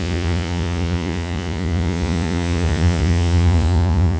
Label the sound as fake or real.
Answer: fake